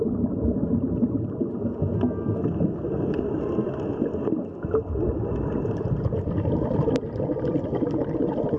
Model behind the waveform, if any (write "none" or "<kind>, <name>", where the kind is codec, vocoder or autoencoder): none